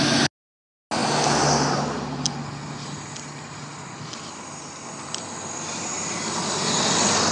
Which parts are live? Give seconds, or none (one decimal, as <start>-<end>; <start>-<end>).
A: 0.0-7.3